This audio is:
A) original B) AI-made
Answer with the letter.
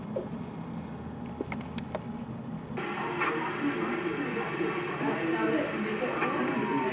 A